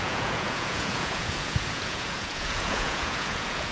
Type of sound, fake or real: fake